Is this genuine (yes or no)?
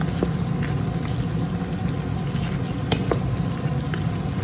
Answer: yes